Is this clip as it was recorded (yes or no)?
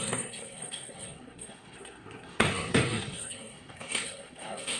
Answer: no